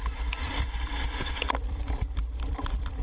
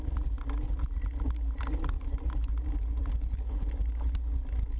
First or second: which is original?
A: second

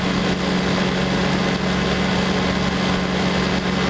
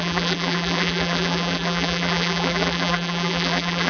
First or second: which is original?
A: first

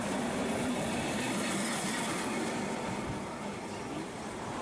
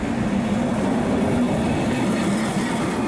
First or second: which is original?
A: second